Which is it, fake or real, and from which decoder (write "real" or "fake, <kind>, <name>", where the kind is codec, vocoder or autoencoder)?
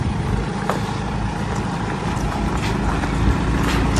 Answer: fake, vocoder, BigVGAN v2